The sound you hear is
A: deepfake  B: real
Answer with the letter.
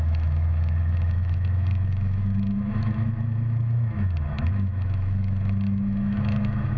A